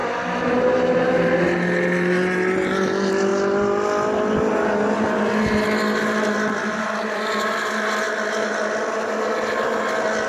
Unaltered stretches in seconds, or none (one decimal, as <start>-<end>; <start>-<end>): 0.0-10.3